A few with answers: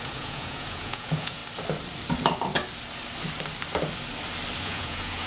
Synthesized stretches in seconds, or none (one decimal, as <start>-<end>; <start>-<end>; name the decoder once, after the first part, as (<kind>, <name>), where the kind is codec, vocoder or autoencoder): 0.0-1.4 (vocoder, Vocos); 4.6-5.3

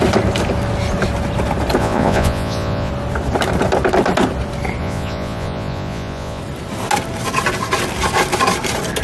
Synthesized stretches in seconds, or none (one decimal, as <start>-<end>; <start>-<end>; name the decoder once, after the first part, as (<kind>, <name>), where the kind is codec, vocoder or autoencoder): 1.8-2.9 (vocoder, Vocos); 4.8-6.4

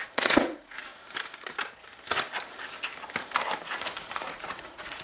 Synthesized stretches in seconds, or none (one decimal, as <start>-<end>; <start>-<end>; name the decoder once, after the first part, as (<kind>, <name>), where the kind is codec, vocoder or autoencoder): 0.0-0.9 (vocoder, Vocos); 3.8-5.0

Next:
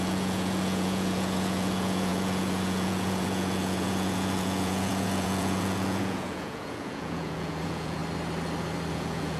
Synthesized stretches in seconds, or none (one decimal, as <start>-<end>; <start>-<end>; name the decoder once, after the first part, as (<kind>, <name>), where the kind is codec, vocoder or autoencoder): 0.0-8.0 (vocoder, Vocos); 8.9-9.4

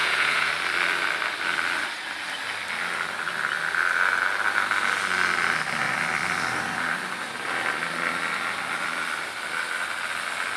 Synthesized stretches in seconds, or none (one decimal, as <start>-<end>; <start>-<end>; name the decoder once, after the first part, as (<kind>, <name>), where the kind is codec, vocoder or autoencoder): 0.0-0.5 (vocoder, Vocos)